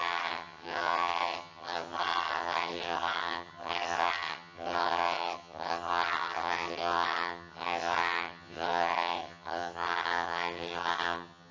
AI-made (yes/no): yes